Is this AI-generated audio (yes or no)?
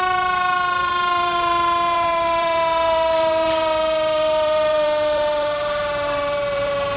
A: yes